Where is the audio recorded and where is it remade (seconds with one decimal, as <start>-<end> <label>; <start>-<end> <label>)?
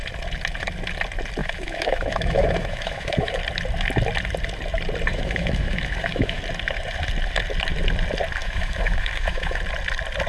0.0-1.4 recorded; 1.4-3.4 remade; 3.4-5.1 recorded; 5.1-6.4 remade; 6.4-8.4 recorded; 8.4-9.6 remade; 9.6-10.3 recorded